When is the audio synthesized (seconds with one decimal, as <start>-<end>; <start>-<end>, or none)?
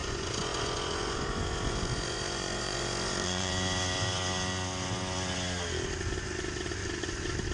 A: 0.0-3.5